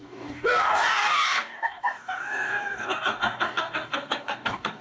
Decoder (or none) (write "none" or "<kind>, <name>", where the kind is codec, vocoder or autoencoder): codec, DAC